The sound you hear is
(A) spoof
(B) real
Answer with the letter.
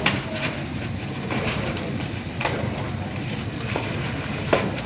A